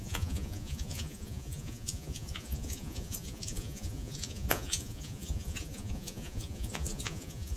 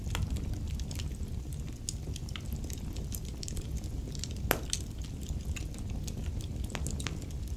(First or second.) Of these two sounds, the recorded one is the second